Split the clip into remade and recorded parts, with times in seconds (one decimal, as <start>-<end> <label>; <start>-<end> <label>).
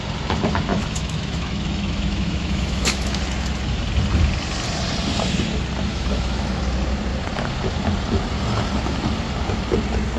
0.0-0.7 recorded; 0.7-3.2 remade; 3.2-5.9 recorded; 5.9-6.6 remade; 6.6-10.2 recorded